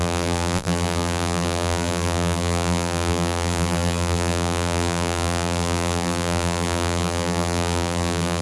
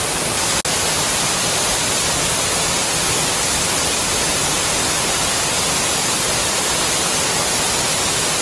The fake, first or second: first